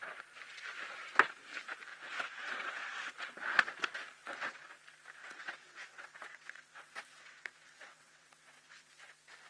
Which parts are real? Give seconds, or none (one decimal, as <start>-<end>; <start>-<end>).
0.0-1.9; 3.1-4.2; 4.7-5.2; 8.9-9.5